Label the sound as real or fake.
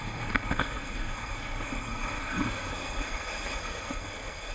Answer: fake